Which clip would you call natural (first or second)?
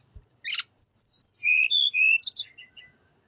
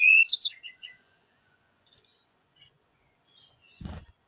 first